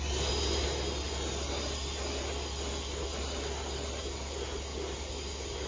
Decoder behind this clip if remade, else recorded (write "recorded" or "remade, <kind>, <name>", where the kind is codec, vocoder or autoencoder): recorded